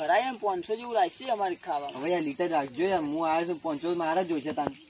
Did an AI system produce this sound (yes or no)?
no